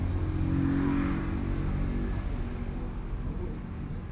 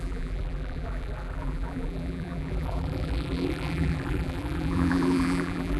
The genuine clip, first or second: first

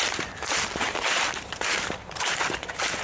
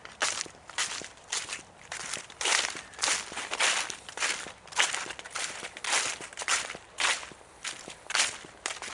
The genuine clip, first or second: second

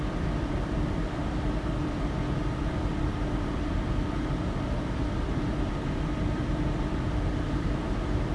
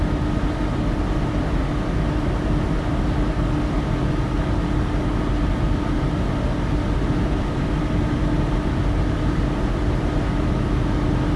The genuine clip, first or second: second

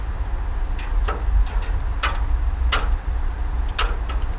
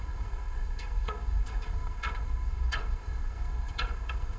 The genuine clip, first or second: first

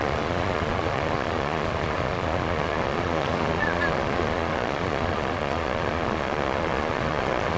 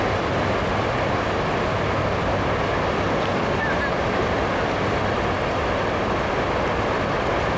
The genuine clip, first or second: second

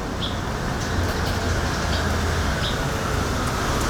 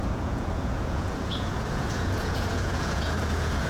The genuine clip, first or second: first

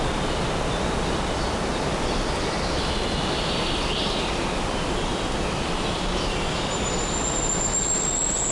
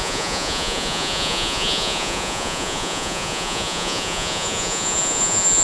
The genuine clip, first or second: first